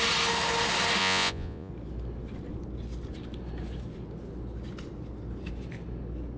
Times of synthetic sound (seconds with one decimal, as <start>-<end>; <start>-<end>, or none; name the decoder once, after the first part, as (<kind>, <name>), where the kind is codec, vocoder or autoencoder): 1.0-1.7 (vocoder, Vocos)